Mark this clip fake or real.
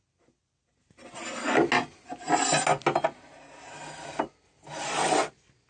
real